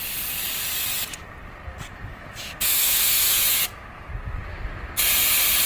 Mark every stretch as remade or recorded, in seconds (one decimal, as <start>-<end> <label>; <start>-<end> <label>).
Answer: 0.0-2.1 recorded; 2.1-4.1 remade; 4.1-5.7 recorded